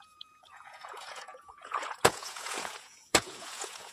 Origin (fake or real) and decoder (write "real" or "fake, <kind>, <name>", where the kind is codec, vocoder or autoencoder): fake, vocoder, Vocos